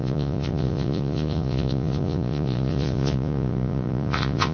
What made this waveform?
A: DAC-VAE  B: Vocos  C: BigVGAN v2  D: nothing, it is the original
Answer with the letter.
B